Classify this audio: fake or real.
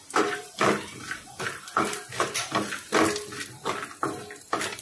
real